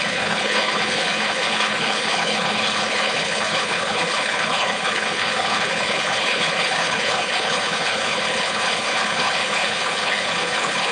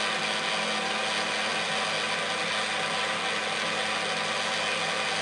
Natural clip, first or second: second